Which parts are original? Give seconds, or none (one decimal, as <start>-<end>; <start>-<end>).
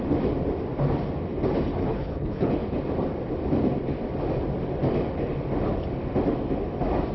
0.0-1.8; 2.5-7.1